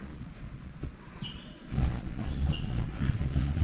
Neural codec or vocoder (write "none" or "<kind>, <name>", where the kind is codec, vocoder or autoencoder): vocoder, Vocos